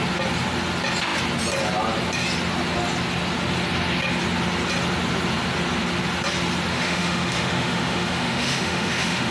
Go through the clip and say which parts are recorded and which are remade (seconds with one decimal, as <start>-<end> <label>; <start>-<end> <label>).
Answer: 0.0-6.7 recorded; 6.7-9.3 remade